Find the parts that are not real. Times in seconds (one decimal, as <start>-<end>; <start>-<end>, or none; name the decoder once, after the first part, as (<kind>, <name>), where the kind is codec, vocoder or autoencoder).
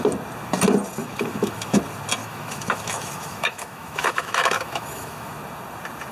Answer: 1.0-1.8 (autoencoder, DAC-VAE); 2.2-5.3